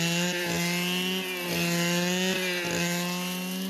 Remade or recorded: recorded